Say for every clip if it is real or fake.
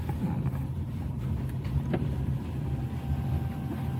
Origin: real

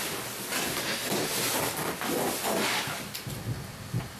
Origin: real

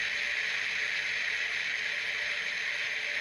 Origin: real